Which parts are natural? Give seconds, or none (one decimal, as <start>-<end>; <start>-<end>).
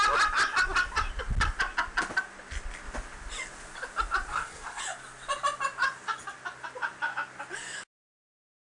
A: 0.0-4.3; 4.8-8.7